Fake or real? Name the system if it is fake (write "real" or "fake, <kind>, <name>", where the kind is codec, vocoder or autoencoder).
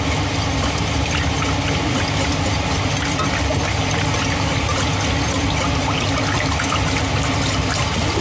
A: real